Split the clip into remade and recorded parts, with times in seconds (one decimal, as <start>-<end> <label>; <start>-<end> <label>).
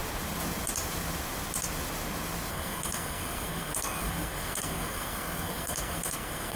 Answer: 0.0-2.5 recorded; 2.5-6.6 remade